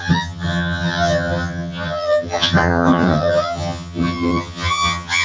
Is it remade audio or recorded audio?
remade